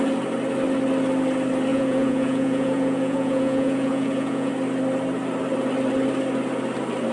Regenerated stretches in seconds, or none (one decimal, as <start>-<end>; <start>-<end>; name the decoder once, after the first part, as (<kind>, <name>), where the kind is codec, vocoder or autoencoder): 1.7-4.5 (vocoder, Vocos)